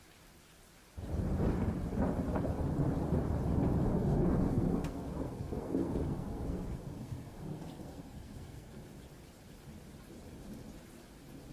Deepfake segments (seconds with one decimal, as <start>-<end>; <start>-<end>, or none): 3.9-8.8